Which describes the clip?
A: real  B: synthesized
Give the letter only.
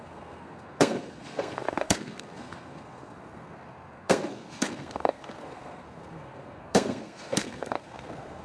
B